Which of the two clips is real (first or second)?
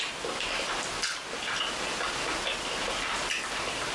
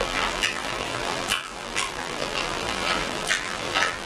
first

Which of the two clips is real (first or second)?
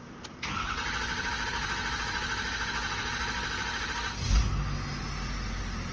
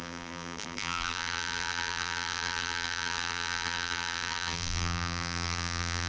first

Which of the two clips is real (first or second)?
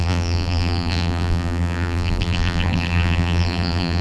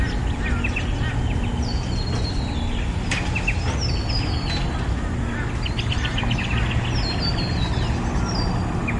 second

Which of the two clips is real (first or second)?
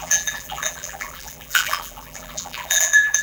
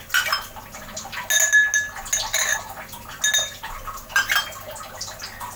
second